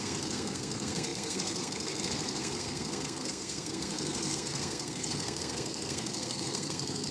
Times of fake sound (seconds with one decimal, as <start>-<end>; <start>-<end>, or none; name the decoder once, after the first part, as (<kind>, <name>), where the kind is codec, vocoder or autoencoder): 0.0-7.1 (codec, SNAC)